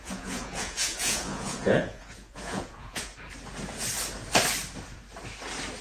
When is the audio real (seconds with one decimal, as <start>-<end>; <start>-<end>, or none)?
3.1-5.8